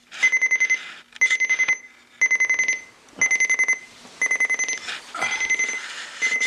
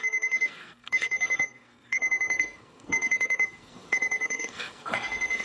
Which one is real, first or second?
first